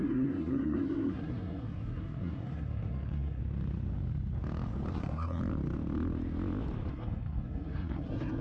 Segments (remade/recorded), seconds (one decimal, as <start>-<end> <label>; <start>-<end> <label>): 0.0-3.4 remade; 3.4-4.9 recorded; 4.9-5.4 remade; 5.4-6.9 recorded; 6.9-8.4 remade